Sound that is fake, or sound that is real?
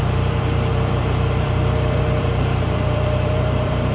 fake